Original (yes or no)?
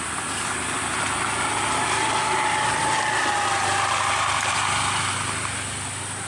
yes